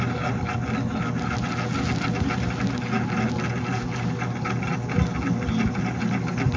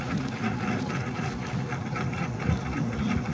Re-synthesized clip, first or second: second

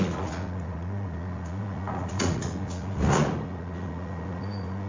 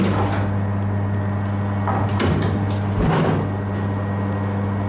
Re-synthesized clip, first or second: first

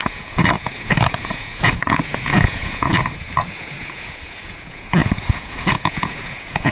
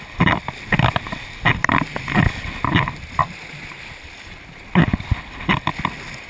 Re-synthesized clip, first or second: first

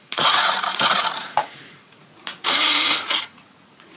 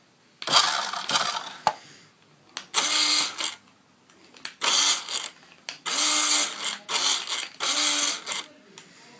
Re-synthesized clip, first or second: first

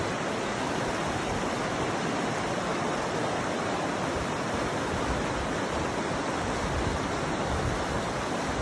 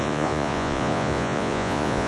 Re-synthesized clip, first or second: second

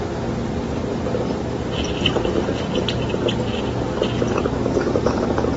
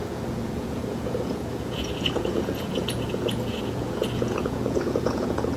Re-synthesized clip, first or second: second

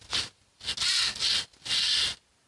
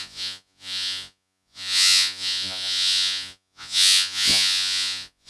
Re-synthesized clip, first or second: second